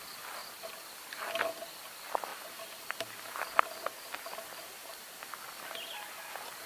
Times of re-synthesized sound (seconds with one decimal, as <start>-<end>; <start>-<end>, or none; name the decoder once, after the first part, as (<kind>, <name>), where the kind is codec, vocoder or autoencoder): none